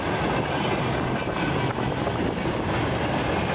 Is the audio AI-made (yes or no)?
no